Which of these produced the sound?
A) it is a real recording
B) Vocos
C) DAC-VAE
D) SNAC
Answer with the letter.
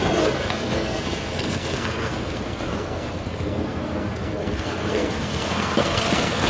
D